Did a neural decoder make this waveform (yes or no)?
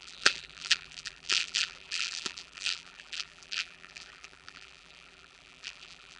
yes